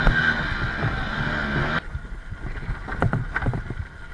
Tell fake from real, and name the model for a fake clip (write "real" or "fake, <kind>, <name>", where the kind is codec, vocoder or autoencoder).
real